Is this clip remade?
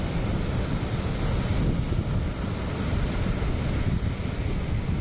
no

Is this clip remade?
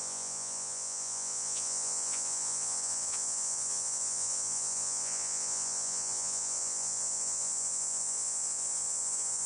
yes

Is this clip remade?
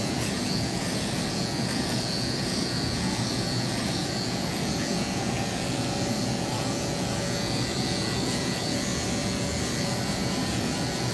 yes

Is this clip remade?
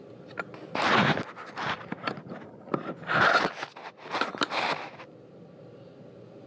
no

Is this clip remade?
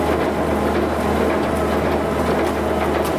no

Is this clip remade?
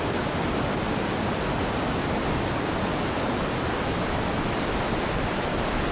no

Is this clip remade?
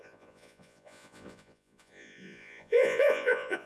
yes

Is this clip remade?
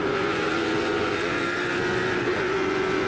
yes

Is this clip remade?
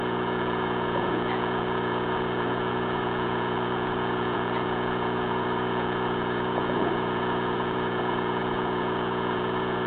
yes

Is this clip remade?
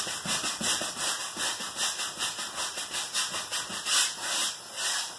no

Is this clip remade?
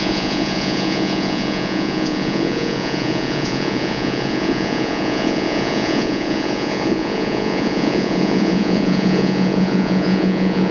yes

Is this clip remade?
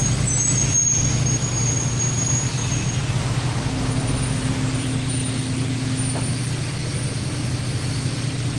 no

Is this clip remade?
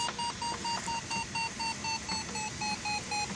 no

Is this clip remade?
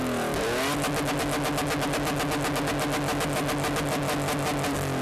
no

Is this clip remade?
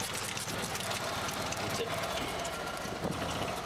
no